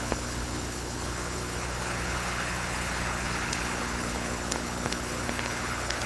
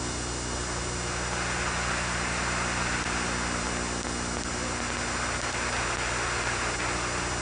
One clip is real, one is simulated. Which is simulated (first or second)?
first